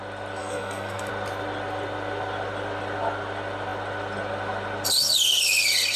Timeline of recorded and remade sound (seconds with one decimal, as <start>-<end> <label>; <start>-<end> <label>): 0.0-0.4 recorded; 0.4-1.1 remade; 1.1-6.0 recorded